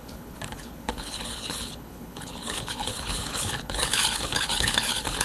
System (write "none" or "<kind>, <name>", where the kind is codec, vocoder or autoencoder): codec, HILCodec